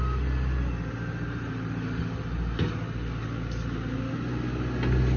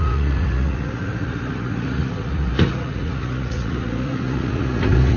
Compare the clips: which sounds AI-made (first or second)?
second